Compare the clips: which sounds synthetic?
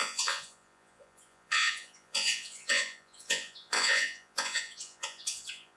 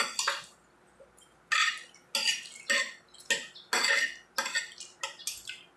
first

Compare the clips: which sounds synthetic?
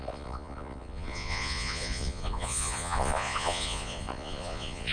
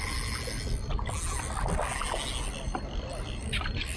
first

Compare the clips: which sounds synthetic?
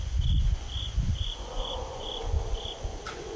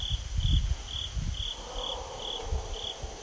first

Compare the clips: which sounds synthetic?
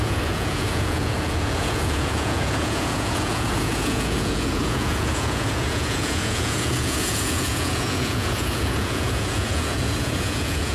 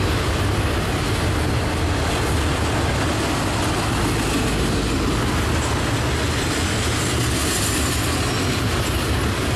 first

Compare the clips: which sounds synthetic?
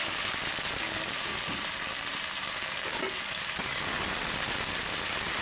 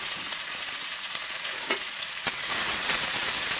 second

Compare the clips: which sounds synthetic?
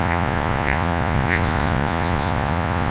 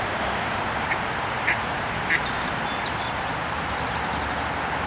first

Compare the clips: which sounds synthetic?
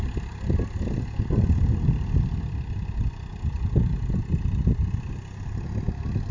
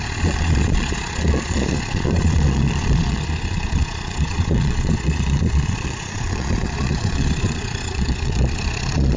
second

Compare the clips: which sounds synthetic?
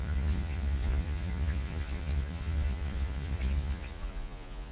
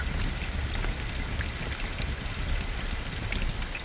first